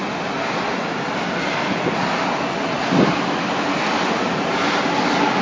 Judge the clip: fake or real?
real